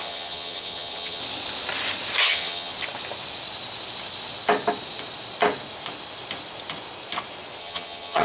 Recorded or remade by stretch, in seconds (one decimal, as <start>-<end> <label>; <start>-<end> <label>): 0.0-1.2 remade; 1.2-2.2 recorded; 2.2-2.7 remade; 2.7-7.6 recorded; 7.6-8.2 remade